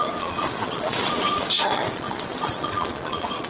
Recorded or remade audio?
remade